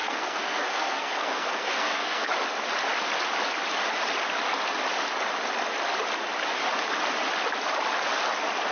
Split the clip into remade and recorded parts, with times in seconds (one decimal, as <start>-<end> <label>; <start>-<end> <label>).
0.0-2.3 remade; 2.3-8.7 recorded